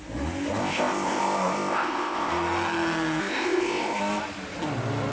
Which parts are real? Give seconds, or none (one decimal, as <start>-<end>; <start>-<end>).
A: 0.0-0.6; 2.3-3.2; 4.0-5.1